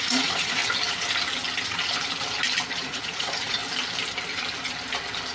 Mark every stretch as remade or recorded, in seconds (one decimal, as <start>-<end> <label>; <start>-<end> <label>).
0.0-0.6 remade; 0.6-2.8 recorded; 2.8-3.6 remade; 3.6-5.3 recorded